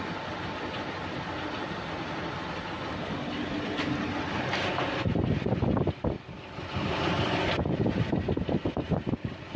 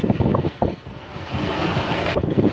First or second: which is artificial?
second